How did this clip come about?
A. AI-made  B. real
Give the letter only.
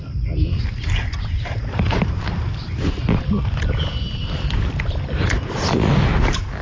B